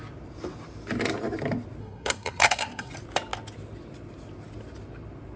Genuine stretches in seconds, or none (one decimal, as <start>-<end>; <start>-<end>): 0.0-1.8; 2.9-5.4